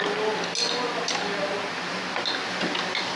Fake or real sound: real